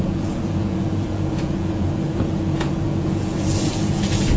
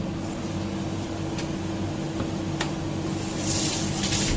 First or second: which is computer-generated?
first